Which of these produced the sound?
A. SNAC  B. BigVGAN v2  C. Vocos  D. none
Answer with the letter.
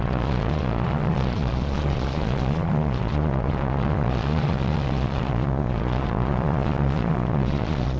C